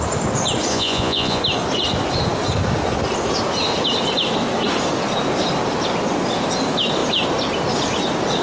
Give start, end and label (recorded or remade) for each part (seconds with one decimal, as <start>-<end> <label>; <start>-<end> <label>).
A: 0.0-0.7 recorded; 0.7-1.4 remade; 1.4-8.4 recorded